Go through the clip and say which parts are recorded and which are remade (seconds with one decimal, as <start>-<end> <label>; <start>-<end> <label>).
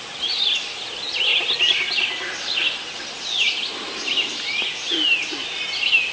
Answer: 0.0-6.1 recorded